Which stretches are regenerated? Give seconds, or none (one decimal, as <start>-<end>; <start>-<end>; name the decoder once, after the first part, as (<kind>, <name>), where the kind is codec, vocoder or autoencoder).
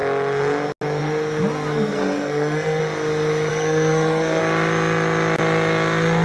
1.7-2.8 (codec, SNAC); 3.5-4.4